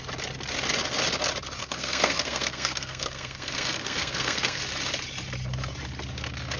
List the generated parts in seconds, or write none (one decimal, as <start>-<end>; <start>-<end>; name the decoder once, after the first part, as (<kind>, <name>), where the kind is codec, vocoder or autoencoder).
1.6-4.6 (codec, SNAC)